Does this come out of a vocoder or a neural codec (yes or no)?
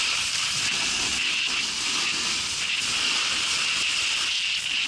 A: no